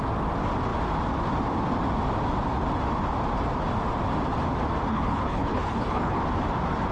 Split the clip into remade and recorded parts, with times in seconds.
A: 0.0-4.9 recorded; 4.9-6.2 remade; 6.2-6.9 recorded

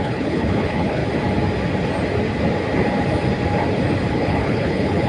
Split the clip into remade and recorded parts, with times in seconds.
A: 0.0-1.0 remade; 1.0-4.1 recorded; 4.1-5.1 remade

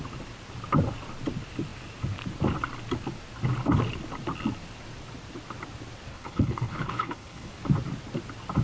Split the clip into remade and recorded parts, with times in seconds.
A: 0.0-6.1 recorded; 6.1-7.5 remade; 7.5-8.6 recorded

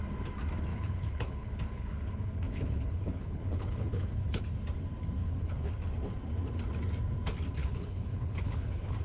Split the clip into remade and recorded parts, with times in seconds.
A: 0.0-0.7 recorded; 0.7-4.4 remade; 4.4-5.2 recorded; 5.2-5.7 remade; 5.7-7.6 recorded; 7.6-9.0 remade

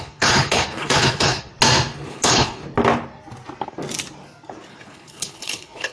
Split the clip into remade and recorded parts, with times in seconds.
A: 0.0-1.5 remade; 1.5-2.1 recorded; 2.1-2.6 remade; 2.6-4.7 recorded; 4.7-5.9 remade

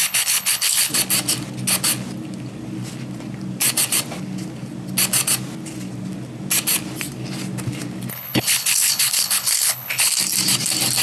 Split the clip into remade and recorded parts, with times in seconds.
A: 0.0-0.9 remade; 0.9-8.1 recorded; 8.1-10.2 remade; 10.2-11.0 recorded

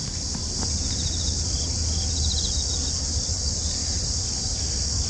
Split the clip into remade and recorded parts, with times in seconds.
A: 0.0-5.1 recorded

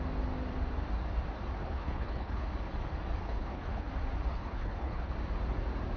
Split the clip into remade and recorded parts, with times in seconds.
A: 0.0-1.6 recorded; 1.6-2.5 remade; 2.5-3.2 recorded; 3.2-3.9 remade; 3.9-4.3 recorded; 4.3-5.1 remade; 5.1-6.0 recorded